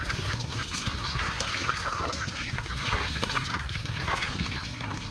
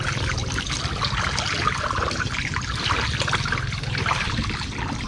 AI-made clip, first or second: first